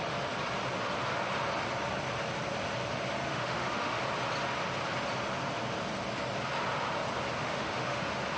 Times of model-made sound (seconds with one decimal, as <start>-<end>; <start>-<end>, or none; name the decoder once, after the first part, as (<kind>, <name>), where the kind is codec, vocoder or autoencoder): 3.3-4.0 (autoencoder, DAC-VAE); 7.4-8.0